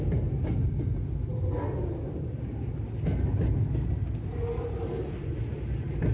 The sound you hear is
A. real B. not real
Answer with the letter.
A